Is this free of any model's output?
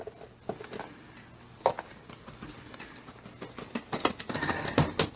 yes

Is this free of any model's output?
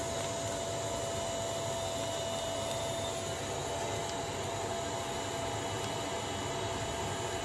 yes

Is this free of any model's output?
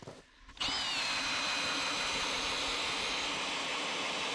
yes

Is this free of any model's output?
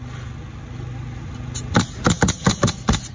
yes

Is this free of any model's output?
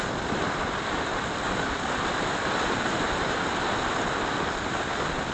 no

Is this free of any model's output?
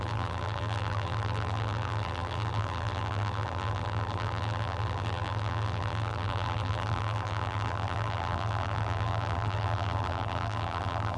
no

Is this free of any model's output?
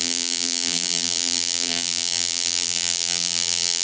no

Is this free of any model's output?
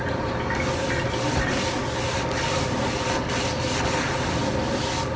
yes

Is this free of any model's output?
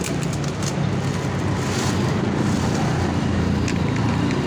yes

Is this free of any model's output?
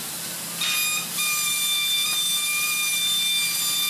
yes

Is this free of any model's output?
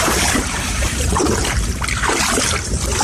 no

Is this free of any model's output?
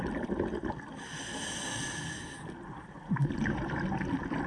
yes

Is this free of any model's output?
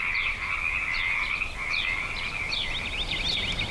yes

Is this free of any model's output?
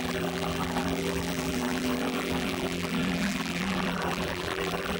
no